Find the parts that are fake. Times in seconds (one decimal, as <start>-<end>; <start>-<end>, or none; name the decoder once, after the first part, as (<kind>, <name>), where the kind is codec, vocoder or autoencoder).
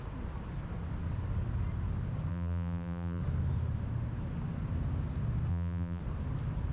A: 2.3-3.2 (vocoder, BigVGAN v2); 5.5-6.0